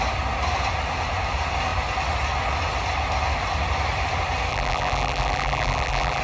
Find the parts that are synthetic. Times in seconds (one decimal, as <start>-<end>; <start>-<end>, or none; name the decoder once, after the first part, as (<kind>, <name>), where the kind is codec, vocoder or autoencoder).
4.5-6.2 (vocoder, BigVGAN v2)